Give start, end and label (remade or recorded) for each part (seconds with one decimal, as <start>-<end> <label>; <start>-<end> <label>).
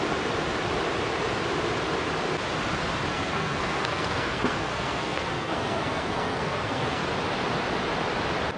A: 0.0-3.1 recorded; 3.1-7.1 remade; 7.1-8.6 recorded